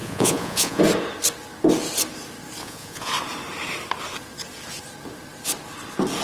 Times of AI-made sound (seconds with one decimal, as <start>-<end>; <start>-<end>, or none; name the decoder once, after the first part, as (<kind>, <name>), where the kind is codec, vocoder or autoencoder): 0.0-0.8 (vocoder, Vocos); 2.6-3.1